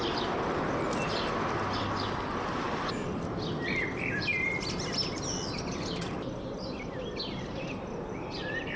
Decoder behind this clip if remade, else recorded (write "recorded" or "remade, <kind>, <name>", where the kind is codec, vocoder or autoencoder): recorded